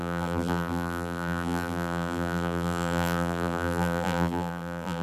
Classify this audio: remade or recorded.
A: remade